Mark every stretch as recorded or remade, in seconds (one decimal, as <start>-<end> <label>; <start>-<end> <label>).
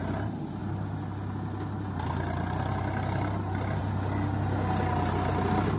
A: 0.0-5.8 recorded